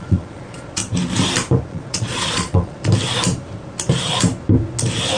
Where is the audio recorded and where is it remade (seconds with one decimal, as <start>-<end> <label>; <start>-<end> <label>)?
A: 0.0-0.8 remade; 0.8-1.7 recorded; 1.7-2.8 remade; 2.8-5.2 recorded